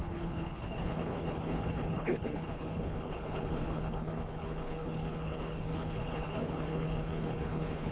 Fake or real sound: fake